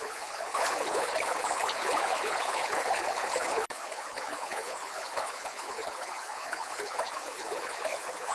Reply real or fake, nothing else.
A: fake